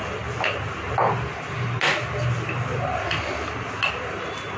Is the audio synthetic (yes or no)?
no